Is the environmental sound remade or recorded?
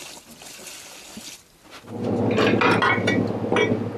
recorded